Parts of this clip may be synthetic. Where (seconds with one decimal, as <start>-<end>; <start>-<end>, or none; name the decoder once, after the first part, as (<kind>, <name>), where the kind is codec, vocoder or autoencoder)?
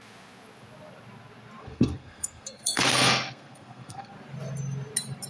1.6-4.1 (codec, SNAC)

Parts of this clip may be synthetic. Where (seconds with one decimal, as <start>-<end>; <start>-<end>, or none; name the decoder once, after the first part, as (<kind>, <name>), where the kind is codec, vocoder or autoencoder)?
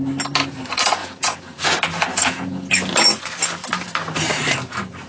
1.0-1.6 (vocoder, Vocos); 2.1-2.7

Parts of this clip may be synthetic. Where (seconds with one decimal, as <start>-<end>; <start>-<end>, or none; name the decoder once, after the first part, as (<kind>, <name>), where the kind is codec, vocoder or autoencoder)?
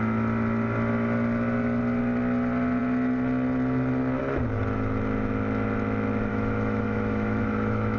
6.3-8.0 (autoencoder, DAC-VAE)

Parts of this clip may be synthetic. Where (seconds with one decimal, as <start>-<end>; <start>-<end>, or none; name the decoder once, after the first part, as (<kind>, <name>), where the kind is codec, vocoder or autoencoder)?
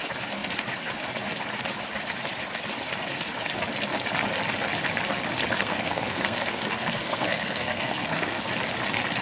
5.6-8.4 (codec, SNAC)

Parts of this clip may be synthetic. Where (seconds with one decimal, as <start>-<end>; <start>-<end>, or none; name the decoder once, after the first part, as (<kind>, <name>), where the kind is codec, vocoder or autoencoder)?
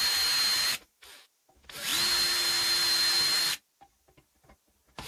none